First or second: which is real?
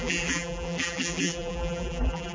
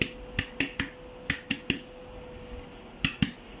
second